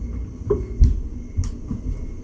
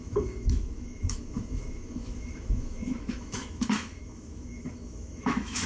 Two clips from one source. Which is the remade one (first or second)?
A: second